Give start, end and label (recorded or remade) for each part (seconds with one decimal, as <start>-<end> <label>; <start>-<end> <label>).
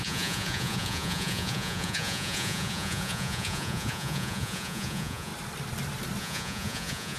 0.0-5.3 remade; 5.3-6.2 recorded; 6.2-7.2 remade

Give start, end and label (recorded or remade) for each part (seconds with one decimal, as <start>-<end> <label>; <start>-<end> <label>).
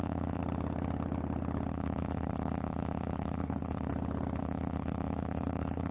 0.0-0.4 remade; 0.4-1.7 recorded; 1.7-3.9 remade; 3.9-4.4 recorded; 4.4-5.9 remade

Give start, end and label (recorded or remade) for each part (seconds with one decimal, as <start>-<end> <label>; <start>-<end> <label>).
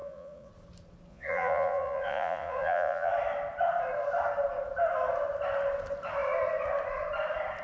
0.0-0.5 remade; 0.5-1.1 recorded; 1.1-3.1 remade; 3.1-7.6 recorded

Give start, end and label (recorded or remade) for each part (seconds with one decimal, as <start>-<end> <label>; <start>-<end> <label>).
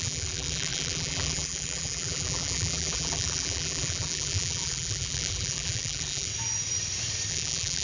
0.0-6.3 remade; 6.3-7.3 recorded; 7.3-7.8 remade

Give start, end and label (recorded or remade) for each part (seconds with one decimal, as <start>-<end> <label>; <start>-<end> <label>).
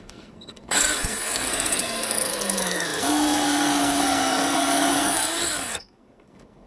0.0-6.7 remade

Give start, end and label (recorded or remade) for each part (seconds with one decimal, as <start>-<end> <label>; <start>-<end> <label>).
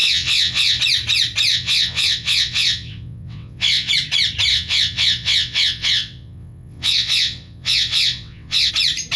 0.0-0.8 remade; 0.8-1.5 recorded; 1.5-3.9 remade; 3.9-4.5 recorded; 4.5-8.7 remade; 8.7-9.2 recorded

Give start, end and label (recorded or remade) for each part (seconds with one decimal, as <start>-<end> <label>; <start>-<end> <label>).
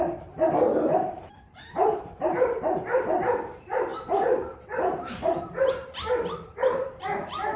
0.0-7.6 remade